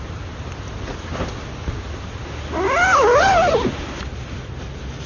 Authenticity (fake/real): real